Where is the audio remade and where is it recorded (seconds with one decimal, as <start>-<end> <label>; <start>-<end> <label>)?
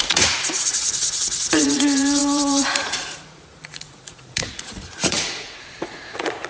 0.0-6.5 remade